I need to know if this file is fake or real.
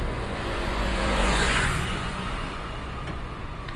fake